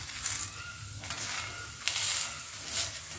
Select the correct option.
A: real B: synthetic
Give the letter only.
A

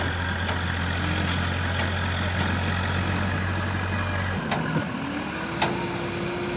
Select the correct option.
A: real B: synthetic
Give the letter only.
A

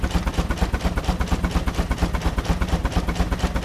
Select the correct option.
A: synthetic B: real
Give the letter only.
B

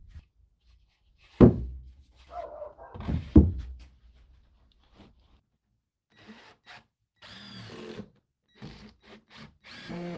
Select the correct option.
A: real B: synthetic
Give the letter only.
B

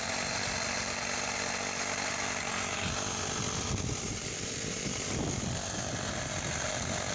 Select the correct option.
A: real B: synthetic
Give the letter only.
A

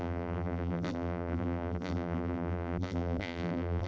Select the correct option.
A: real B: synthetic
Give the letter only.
B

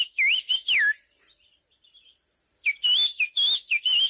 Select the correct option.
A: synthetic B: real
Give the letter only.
B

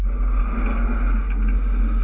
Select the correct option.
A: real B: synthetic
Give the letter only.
A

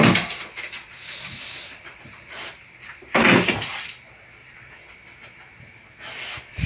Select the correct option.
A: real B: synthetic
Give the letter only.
A